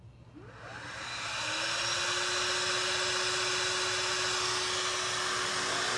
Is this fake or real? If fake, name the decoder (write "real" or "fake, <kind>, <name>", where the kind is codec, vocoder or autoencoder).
real